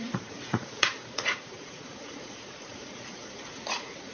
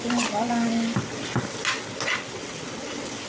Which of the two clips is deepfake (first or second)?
first